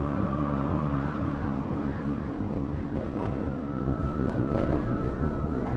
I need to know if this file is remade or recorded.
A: remade